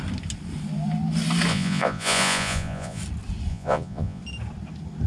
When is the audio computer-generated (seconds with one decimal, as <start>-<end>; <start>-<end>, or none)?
1.5-3.0; 3.5-4.2